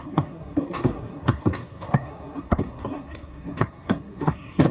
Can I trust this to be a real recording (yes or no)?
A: no